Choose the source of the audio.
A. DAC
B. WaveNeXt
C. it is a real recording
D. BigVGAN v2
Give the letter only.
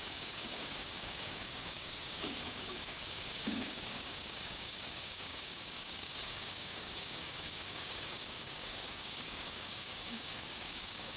A